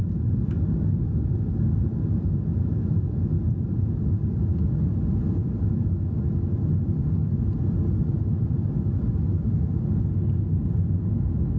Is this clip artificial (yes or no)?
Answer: no